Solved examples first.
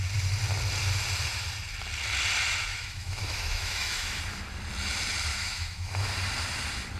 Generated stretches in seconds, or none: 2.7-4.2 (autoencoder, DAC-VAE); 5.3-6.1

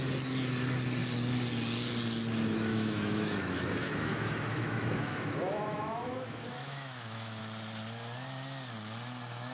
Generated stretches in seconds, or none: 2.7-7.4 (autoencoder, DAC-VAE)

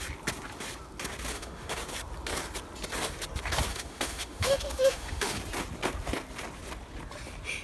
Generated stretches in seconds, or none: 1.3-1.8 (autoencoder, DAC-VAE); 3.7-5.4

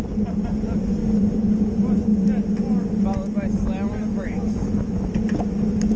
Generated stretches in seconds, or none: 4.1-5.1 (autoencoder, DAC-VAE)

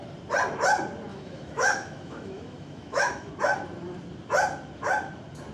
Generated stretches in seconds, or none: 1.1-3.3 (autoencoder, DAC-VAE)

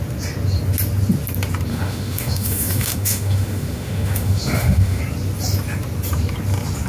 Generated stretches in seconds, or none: 1.7-5.0 (autoencoder, DAC-VAE)